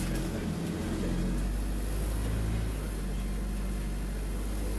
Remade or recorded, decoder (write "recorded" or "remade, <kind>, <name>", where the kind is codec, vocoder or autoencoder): recorded